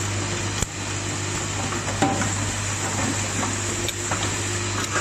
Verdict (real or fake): real